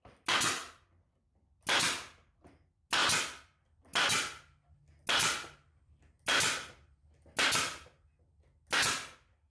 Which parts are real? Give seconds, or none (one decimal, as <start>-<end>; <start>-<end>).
0.0-9.5